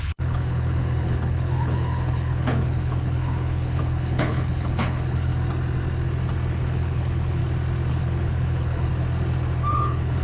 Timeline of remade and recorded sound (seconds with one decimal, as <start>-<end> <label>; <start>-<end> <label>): 0.0-5.3 remade; 5.3-6.5 recorded; 6.5-7.4 remade; 7.4-7.9 recorded; 7.9-8.9 remade; 8.9-9.7 recorded; 9.7-10.2 remade